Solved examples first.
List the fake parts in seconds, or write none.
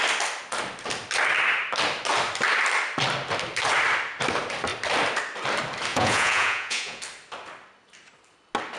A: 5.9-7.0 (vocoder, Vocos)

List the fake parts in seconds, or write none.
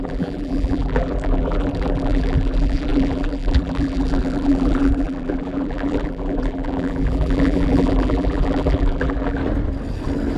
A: 0.0-9.4 (vocoder, BigVGAN v2)